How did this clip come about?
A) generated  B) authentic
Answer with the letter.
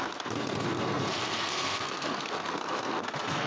A